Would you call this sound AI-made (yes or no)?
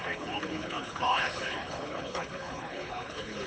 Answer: yes